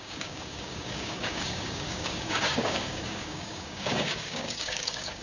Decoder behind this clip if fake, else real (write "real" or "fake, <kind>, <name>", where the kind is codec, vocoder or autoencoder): fake, codec, DAC